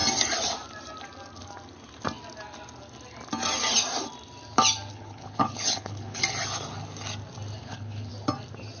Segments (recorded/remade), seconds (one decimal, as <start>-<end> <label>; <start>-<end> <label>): 0.0-4.9 recorded; 4.9-6.2 remade; 6.2-7.6 recorded; 7.6-8.1 remade; 8.1-8.8 recorded